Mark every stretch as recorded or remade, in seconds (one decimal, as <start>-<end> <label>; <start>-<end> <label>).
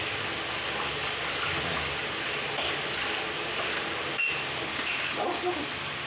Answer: 0.0-6.1 recorded